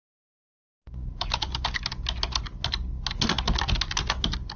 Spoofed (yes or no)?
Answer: no